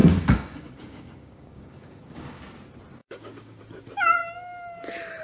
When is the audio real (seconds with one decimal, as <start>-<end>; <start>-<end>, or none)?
2.4-3.0; 3.6-5.2